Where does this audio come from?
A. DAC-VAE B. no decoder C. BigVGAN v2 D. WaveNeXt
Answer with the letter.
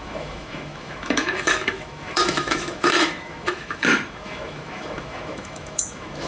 A